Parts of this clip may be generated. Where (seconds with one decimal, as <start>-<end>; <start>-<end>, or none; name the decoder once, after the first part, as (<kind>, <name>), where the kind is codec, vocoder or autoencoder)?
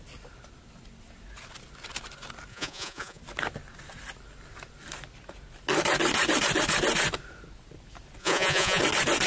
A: 2.5-3.2 (vocoder, Vocos); 8.2-8.8